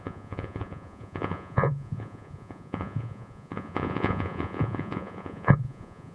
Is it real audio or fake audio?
fake